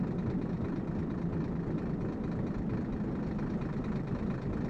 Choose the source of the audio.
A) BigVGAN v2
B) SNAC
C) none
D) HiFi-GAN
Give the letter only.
C